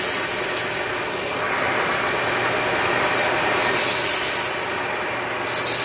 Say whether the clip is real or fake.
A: real